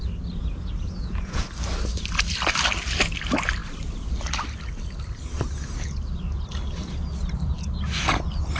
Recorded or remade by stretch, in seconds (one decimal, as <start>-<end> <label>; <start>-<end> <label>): 0.0-0.4 recorded; 0.4-1.5 remade; 1.5-8.6 recorded